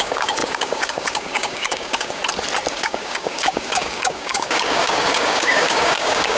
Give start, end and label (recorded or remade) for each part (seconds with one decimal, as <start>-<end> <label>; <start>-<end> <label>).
0.0-2.2 remade; 2.2-2.7 recorded; 2.7-6.4 remade